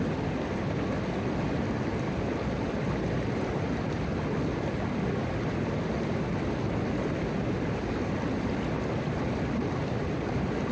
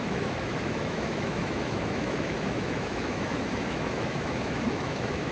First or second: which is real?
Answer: first